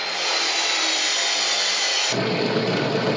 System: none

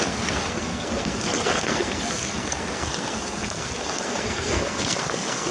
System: codec, SNAC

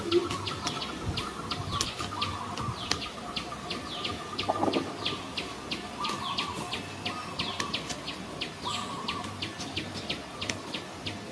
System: none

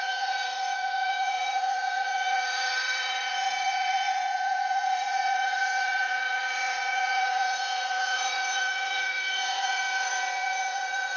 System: vocoder, Vocos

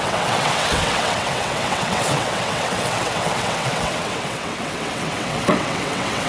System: vocoder, WaveNeXt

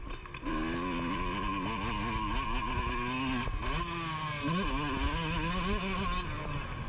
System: none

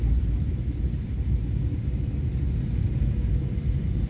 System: none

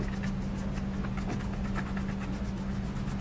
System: none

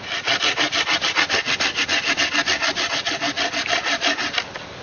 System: none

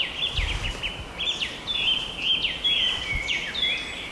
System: none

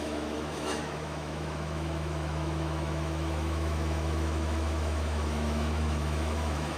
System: autoencoder, DAC-VAE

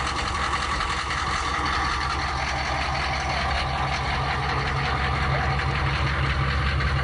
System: none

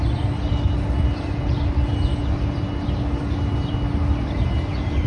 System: none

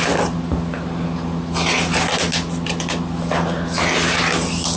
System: none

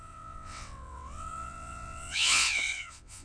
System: vocoder, WaveNeXt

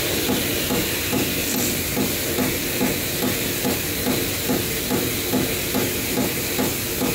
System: none